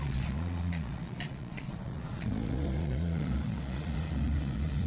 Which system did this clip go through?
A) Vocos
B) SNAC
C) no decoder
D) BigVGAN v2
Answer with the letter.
A